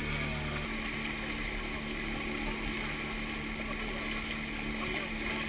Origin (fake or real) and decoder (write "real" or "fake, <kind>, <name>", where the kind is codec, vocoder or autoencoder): real